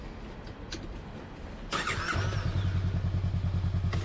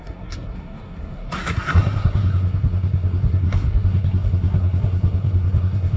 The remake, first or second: second